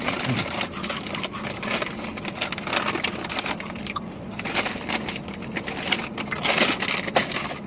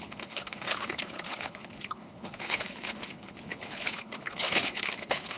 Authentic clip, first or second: first